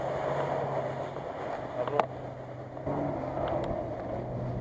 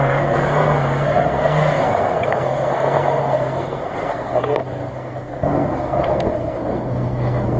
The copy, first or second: second